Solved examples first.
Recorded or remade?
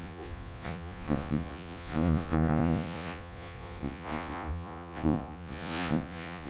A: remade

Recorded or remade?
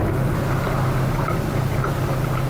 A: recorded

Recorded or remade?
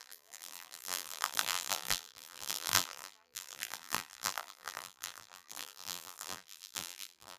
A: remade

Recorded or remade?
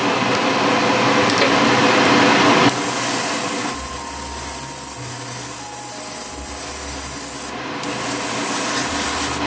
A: recorded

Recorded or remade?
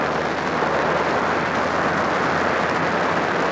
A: recorded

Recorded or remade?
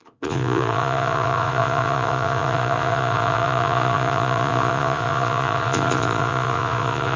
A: remade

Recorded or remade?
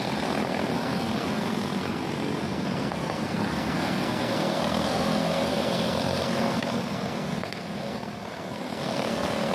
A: remade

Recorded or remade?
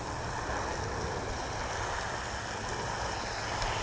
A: recorded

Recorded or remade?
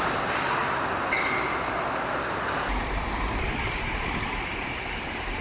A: recorded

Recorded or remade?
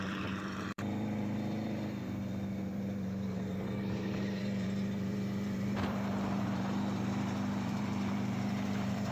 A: remade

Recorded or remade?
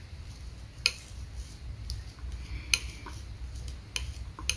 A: recorded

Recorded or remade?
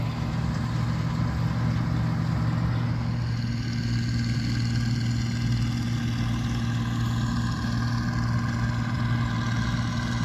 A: recorded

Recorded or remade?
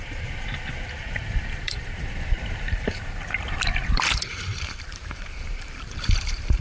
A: remade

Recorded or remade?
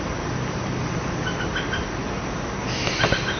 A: recorded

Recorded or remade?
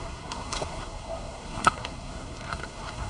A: remade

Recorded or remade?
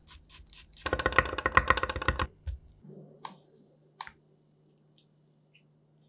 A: recorded